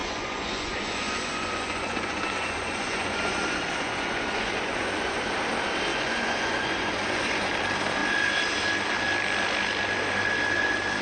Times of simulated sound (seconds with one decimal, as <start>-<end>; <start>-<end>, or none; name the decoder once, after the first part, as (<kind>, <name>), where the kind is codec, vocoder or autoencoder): 0.0-5.2 (vocoder, Vocos); 5.9-7.5